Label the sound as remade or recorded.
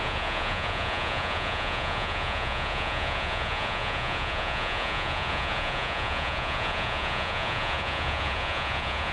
remade